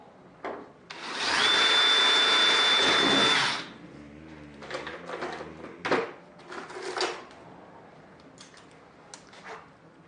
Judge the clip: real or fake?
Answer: real